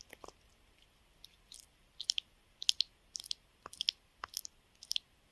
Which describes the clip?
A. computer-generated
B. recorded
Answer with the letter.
B